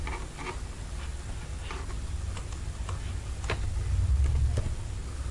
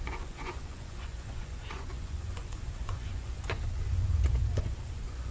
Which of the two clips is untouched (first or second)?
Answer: first